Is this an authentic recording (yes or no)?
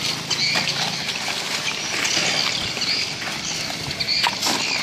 yes